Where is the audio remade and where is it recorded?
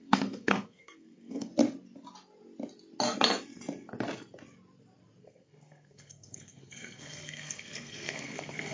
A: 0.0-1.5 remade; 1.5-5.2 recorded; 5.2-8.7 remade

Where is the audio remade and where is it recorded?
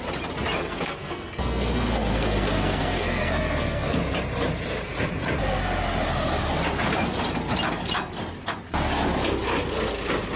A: 0.0-0.6 recorded; 0.6-4.0 remade; 4.0-10.4 recorded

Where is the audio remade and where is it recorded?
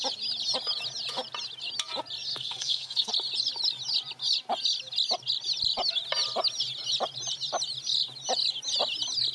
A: 0.0-2.3 recorded; 2.3-3.1 remade; 3.1-9.3 recorded